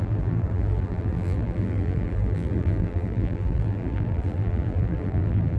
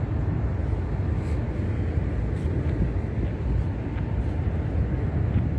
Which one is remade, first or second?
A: first